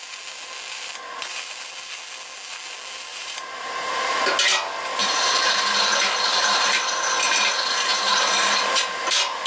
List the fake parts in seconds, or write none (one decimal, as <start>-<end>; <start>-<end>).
3.1-4.3; 5.0-6.8; 7.9-9.5